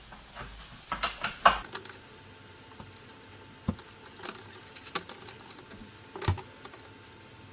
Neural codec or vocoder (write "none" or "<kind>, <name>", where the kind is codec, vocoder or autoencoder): none